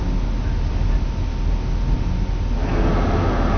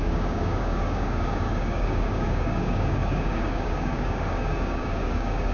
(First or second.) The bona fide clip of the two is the first